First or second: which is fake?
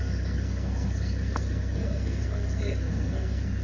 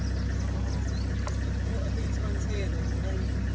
first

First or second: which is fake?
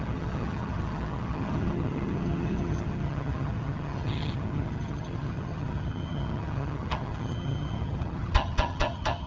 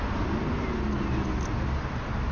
first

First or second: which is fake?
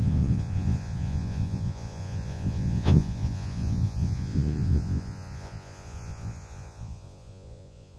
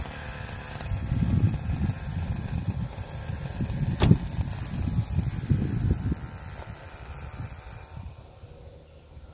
first